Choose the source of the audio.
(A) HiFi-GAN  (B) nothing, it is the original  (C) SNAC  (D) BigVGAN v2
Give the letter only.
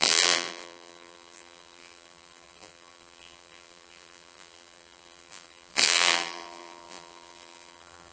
D